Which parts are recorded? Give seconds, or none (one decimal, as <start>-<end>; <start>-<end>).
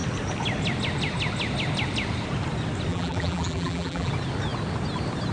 0.0-2.9; 4.1-5.3